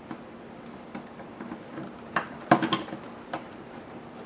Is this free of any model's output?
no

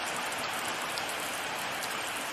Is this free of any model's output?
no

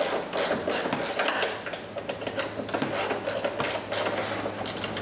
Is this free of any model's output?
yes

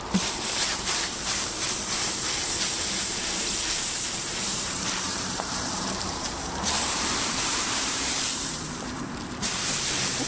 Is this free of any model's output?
no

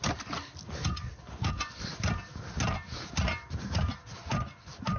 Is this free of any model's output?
yes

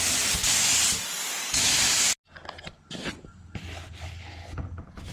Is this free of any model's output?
yes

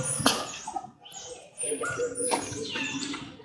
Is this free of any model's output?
yes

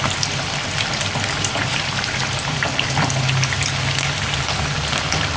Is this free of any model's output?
no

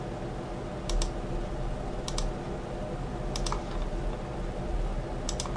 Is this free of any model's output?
yes